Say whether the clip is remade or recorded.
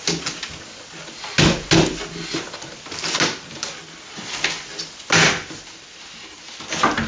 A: recorded